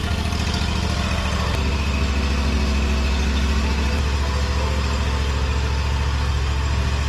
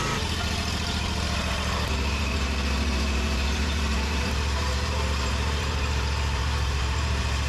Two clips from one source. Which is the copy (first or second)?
second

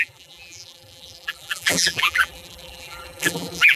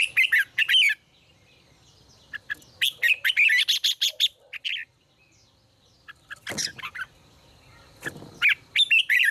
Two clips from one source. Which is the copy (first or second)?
first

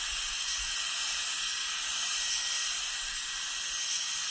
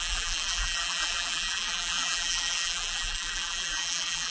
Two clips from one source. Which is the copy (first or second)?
second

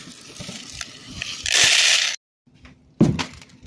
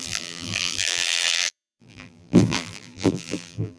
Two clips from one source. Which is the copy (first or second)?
second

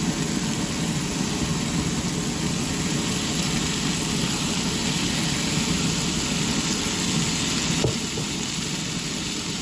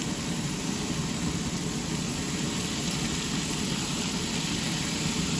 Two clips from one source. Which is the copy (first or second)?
second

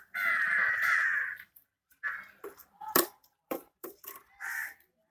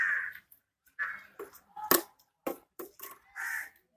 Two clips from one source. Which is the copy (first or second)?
first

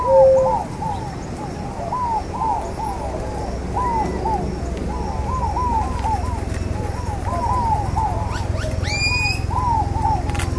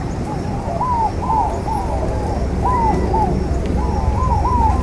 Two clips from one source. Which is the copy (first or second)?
second